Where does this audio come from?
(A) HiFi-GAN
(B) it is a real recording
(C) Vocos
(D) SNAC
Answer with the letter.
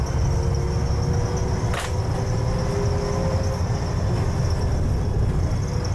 B